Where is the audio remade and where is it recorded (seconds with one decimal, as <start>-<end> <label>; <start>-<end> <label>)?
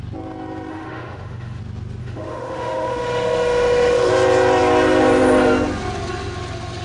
0.0-0.7 recorded; 0.7-1.6 remade; 1.6-2.0 recorded; 2.0-4.1 remade; 4.1-6.8 recorded